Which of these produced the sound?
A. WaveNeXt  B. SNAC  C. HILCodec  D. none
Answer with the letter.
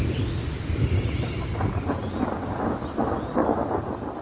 D